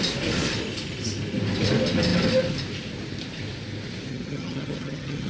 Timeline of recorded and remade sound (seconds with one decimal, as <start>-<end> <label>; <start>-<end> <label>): 0.0-4.1 recorded; 4.1-5.3 remade